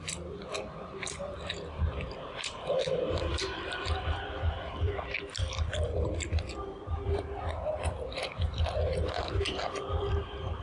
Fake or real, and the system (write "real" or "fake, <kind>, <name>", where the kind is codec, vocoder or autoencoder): fake, vocoder, BigVGAN v2